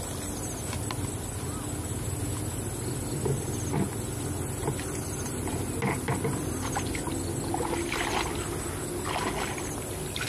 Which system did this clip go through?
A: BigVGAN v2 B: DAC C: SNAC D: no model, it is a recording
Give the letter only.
D